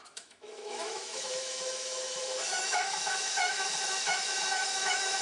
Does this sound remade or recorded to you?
remade